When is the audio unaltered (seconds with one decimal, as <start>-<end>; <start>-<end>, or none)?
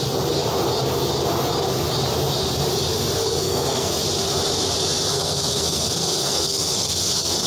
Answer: 0.0-3.2; 3.9-5.1